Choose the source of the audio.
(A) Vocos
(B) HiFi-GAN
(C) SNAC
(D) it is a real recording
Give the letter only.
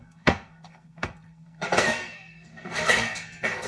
C